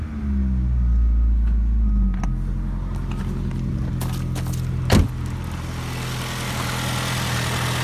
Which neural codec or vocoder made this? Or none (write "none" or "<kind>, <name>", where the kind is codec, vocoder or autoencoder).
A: none